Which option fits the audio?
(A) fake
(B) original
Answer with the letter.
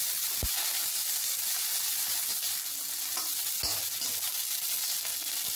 B